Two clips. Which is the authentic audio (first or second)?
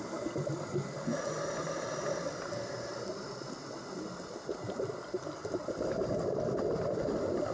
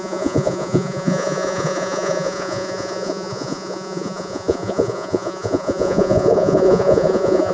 first